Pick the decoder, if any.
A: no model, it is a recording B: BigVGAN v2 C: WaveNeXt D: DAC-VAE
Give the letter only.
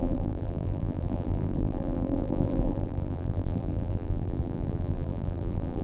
B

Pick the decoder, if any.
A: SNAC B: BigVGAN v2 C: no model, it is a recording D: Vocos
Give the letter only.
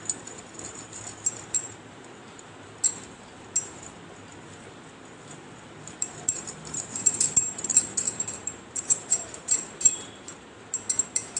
B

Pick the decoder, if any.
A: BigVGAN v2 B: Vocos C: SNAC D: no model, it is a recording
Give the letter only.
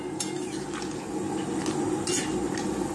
D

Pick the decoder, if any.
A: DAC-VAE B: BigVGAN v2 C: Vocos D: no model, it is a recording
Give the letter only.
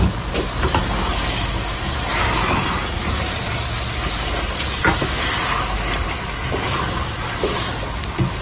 D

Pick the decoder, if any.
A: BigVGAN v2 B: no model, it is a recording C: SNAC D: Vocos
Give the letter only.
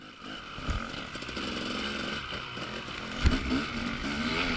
B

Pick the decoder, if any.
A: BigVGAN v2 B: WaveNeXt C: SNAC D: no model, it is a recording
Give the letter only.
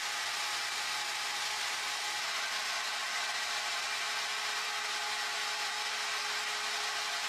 D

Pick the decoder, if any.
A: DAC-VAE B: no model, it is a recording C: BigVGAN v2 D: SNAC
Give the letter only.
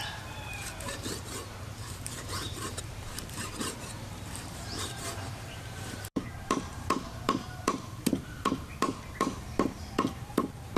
C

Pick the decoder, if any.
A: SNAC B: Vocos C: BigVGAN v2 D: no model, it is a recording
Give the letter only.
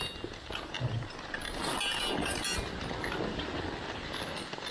D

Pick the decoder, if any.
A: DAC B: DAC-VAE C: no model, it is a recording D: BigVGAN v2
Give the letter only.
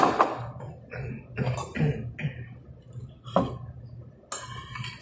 C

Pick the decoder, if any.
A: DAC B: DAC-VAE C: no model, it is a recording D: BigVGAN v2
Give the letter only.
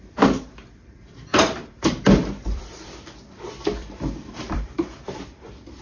D